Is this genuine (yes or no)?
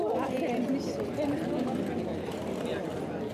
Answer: yes